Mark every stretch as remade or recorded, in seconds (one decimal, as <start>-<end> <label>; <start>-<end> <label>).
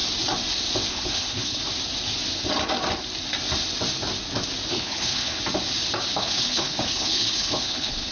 0.0-0.9 recorded; 0.9-1.6 remade; 1.6-4.7 recorded; 4.7-5.4 remade; 5.4-6.2 recorded; 6.2-8.1 remade